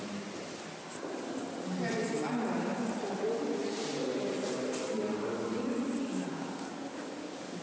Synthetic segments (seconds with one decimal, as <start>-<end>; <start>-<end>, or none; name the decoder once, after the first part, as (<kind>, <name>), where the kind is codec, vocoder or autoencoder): 6.3-7.6 (codec, DAC)